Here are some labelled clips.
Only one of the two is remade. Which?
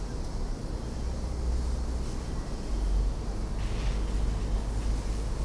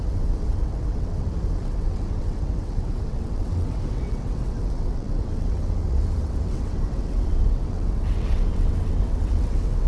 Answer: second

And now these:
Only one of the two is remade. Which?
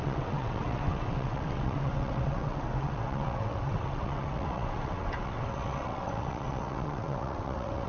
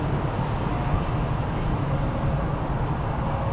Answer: first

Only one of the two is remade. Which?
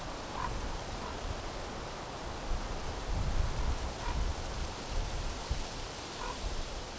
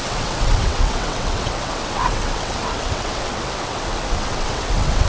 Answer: second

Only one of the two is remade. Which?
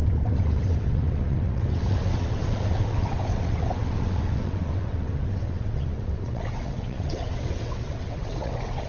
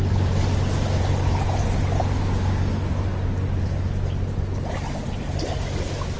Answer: first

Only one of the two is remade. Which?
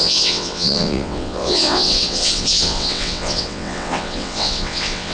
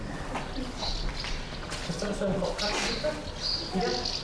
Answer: first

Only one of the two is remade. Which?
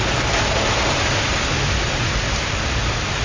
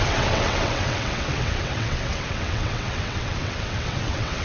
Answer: second